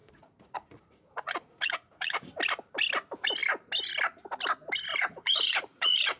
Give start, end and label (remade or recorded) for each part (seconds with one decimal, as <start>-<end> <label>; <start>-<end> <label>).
0.0-2.3 remade; 2.3-4.9 recorded; 4.9-6.2 remade